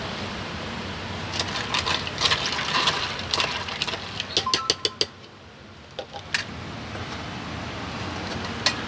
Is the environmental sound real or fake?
real